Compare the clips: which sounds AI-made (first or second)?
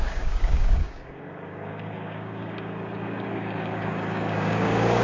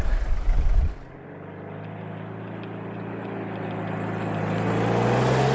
first